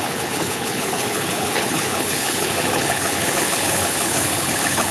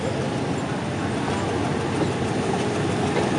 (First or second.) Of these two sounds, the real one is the second